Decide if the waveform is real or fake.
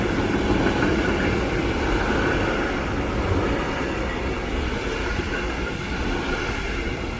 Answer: real